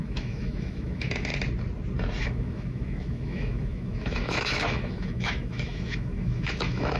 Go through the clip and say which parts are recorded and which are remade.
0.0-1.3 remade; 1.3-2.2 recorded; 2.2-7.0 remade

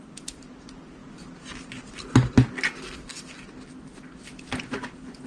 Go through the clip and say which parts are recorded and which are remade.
0.0-5.3 recorded

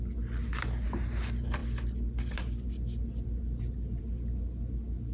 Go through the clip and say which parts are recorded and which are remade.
0.0-5.1 recorded

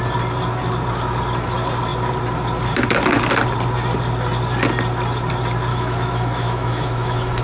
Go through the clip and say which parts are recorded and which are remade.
0.0-5.7 recorded; 5.7-7.4 remade

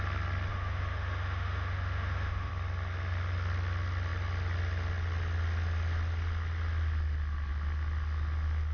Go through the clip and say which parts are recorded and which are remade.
0.0-0.5 recorded; 0.5-2.5 remade; 2.5-8.7 recorded

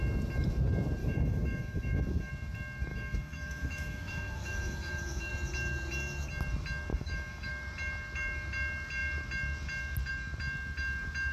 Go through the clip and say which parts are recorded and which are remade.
0.0-1.0 recorded; 1.0-2.3 remade; 2.3-2.9 recorded; 2.9-5.3 remade; 5.3-6.9 recorded; 6.9-7.5 remade; 7.5-11.3 recorded

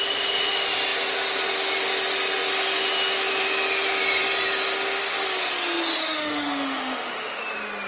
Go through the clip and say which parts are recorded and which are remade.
0.0-6.0 recorded; 6.0-7.4 remade; 7.4-7.9 recorded

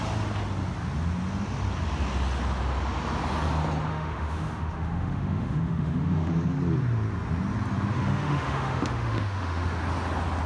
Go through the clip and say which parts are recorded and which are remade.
0.0-3.9 recorded; 3.9-6.3 remade; 6.3-7.9 recorded; 7.9-9.8 remade; 9.8-10.5 recorded